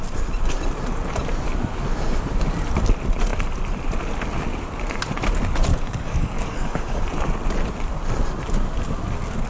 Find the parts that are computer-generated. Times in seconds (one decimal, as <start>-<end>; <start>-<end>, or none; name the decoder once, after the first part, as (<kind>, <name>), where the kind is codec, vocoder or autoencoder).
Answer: 5.7-7.0 (codec, DAC)